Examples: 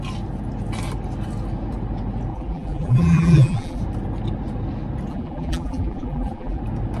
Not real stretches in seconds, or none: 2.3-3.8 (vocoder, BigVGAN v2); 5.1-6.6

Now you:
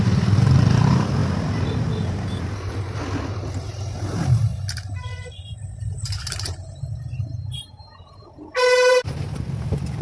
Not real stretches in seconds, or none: 0.0-3.0 (vocoder, BigVGAN v2); 3.6-4.5; 5.4-10.0